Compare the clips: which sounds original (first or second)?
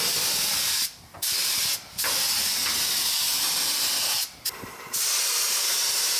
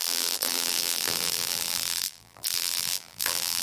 first